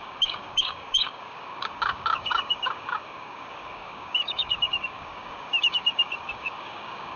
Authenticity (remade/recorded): remade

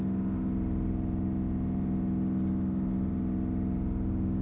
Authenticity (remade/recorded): recorded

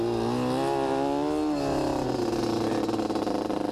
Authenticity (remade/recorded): recorded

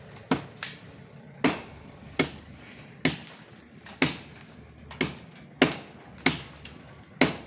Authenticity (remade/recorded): recorded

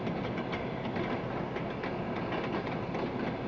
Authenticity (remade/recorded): recorded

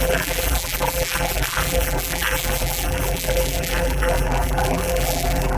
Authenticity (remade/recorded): remade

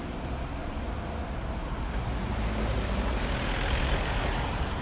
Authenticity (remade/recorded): recorded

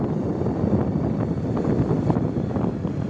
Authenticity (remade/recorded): recorded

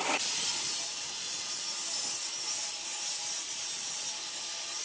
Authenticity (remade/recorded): recorded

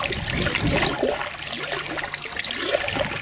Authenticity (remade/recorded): recorded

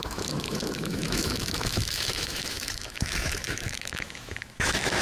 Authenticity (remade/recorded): remade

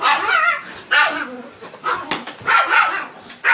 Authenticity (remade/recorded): recorded